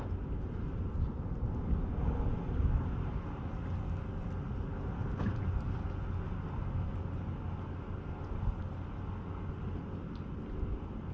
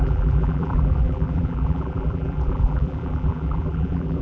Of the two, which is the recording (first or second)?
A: first